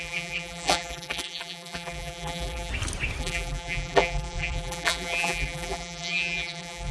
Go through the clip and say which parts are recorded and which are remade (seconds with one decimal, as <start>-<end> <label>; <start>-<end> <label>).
0.0-2.7 remade; 2.7-3.2 recorded; 3.2-6.9 remade

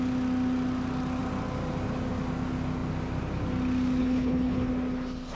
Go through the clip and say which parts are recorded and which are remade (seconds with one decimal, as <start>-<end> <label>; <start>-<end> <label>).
0.0-4.0 recorded; 4.0-4.7 remade; 4.7-5.3 recorded

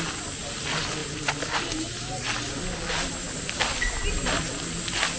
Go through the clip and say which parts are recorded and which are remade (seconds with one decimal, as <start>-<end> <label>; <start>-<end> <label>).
0.0-5.2 recorded